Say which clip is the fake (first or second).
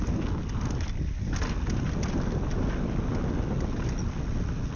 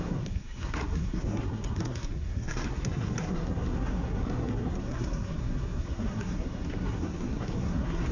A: second